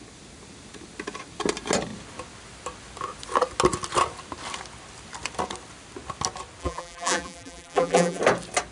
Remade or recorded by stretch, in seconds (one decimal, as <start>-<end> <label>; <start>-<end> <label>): 0.0-6.6 recorded; 6.6-8.2 remade; 8.2-8.7 recorded